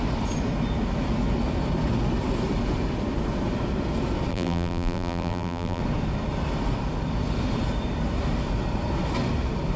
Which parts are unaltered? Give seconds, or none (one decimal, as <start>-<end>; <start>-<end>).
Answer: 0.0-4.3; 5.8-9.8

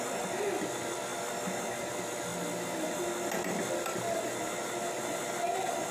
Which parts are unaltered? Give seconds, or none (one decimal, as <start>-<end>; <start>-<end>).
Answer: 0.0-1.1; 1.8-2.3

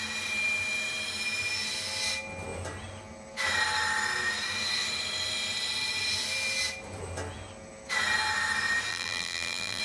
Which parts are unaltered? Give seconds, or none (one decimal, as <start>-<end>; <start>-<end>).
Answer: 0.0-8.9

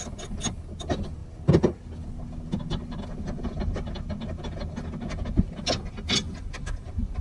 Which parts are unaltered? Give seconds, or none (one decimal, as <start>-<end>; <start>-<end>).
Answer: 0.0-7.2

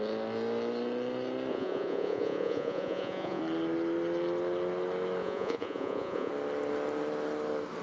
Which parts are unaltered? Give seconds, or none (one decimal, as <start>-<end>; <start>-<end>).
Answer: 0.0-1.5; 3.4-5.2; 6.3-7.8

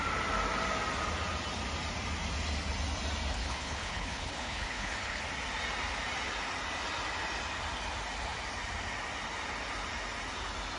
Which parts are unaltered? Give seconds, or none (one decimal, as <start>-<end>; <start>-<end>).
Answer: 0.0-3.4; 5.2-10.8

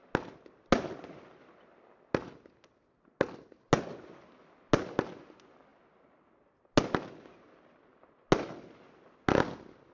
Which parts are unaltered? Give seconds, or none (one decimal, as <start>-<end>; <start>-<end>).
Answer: 0.0-9.9

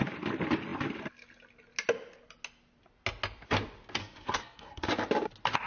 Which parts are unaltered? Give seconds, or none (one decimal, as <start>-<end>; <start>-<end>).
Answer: 0.0-4.0; 4.9-5.7